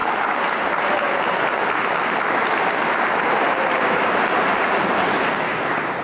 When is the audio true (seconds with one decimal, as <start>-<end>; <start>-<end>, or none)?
1.6-2.8; 4.0-4.5; 5.1-6.0